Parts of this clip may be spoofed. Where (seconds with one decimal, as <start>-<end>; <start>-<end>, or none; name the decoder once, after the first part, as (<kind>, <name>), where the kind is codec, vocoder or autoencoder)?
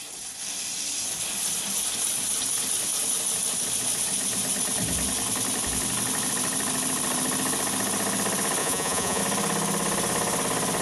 8.6-9.2 (vocoder, Vocos)